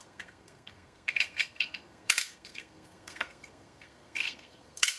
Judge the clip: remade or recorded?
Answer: remade